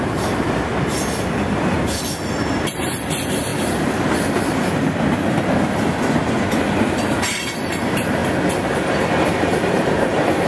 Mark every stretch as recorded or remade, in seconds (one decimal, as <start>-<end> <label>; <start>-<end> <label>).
0.0-0.7 remade; 0.7-2.5 recorded; 2.5-3.5 remade; 3.5-6.8 recorded; 6.8-8.2 remade; 8.2-9.7 recorded; 9.7-10.5 remade